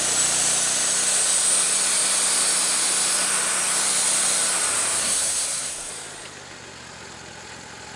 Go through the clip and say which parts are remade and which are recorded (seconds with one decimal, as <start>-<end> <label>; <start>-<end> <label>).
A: 0.0-5.0 recorded; 5.0-5.9 remade; 5.9-8.0 recorded